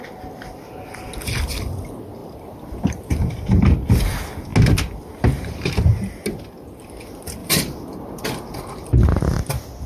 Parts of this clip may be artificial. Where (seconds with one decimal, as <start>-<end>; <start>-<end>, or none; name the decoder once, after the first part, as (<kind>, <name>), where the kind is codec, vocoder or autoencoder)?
7.4-8.2 (vocoder, BigVGAN v2)